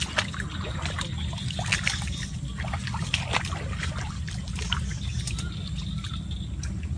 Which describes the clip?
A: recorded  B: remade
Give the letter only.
A